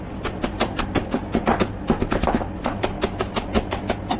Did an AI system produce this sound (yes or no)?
no